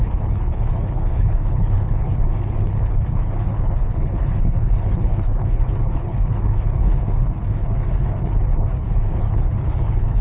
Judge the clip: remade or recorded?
remade